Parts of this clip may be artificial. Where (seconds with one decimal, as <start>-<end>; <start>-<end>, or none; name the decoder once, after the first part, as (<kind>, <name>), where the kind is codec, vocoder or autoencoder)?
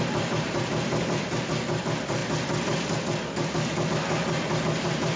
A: 0.0-2.2 (vocoder, BigVGAN v2); 3.9-5.2